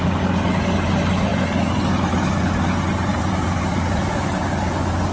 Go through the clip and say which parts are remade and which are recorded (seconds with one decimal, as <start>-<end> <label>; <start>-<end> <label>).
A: 0.0-3.1 recorded; 3.1-4.1 remade; 4.1-5.1 recorded